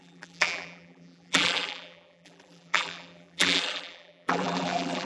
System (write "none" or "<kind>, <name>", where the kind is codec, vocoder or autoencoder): vocoder, BigVGAN v2